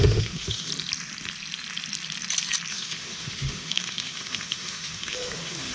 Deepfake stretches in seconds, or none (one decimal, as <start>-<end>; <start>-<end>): 0.0-0.7; 2.7-5.7